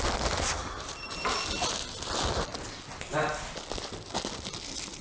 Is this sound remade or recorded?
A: recorded